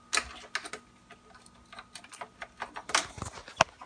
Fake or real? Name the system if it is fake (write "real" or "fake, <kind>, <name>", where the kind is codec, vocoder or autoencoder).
real